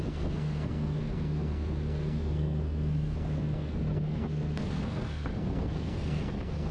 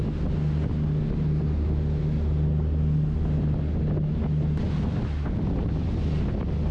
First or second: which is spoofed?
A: first